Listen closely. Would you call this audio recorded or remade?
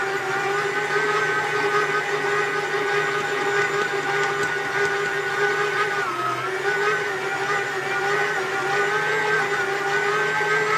recorded